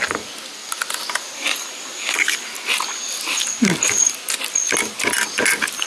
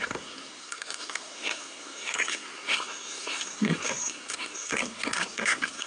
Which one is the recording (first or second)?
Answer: first